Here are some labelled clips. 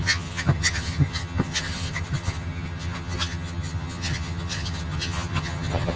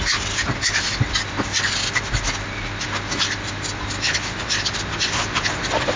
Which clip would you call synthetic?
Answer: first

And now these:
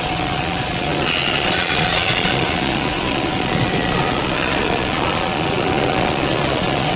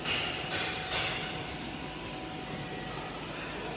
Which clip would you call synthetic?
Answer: first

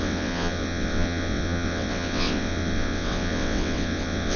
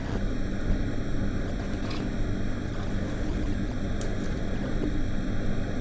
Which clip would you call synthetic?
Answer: first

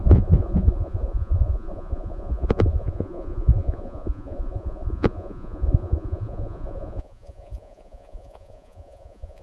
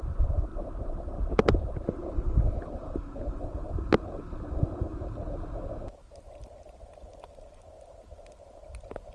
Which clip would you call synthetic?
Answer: first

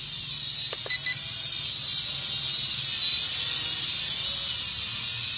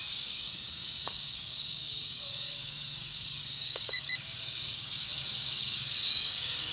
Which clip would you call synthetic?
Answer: second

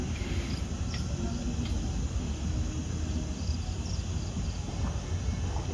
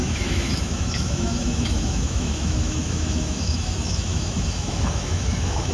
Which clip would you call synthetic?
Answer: second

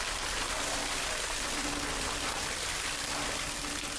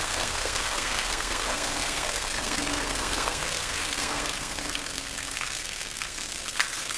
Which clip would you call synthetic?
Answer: second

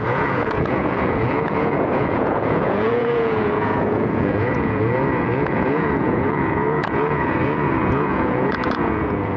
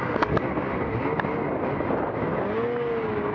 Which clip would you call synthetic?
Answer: first